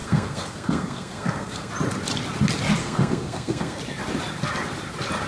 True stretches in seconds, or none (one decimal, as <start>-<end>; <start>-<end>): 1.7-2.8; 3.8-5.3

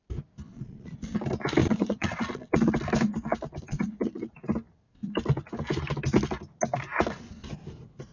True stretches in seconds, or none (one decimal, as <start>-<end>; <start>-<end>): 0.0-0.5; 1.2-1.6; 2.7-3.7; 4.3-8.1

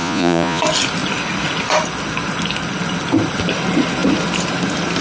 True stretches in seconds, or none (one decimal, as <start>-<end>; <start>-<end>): 0.6-5.0

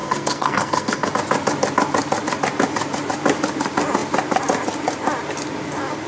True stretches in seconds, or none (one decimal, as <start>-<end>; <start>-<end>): 1.1-6.1

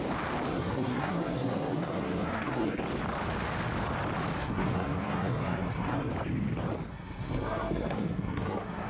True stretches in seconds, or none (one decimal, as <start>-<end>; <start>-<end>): 0.0-0.5; 2.8-4.4; 6.1-6.9